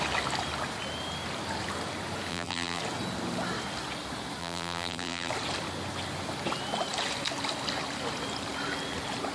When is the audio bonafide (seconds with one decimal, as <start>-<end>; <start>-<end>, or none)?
0.0-2.3; 2.8-4.4; 5.3-9.3